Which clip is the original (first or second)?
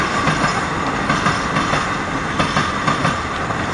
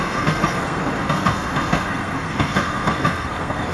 first